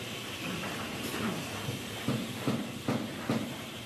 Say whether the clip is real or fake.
fake